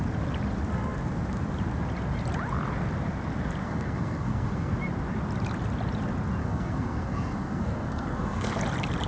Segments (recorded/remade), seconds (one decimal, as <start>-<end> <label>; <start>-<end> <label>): 0.0-3.6 recorded; 3.6-4.7 remade; 4.7-6.4 recorded; 6.4-8.6 remade; 8.6-9.1 recorded